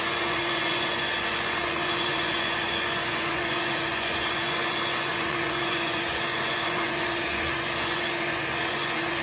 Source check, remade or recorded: remade